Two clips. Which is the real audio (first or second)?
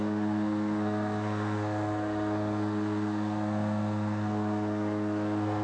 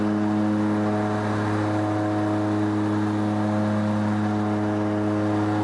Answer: second